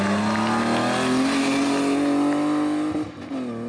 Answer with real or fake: real